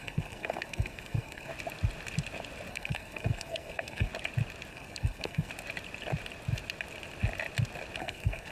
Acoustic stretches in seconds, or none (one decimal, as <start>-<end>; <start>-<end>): 1.5-2.7; 4.1-4.7; 5.5-8.0

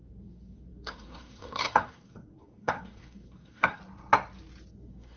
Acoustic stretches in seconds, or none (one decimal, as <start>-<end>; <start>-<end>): 3.8-4.7

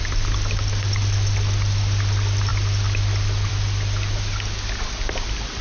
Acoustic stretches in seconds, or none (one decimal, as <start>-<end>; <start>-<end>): 0.0-5.6

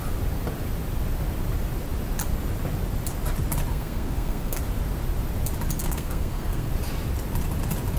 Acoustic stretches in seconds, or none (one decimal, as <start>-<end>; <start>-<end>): 0.0-3.7; 4.6-5.8; 6.7-8.0

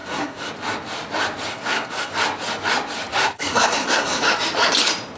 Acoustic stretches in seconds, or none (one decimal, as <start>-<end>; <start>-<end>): 0.5-1.5; 2.1-3.1; 4.2-5.2